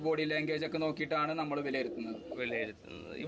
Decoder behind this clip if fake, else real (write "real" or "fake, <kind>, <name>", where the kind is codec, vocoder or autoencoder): real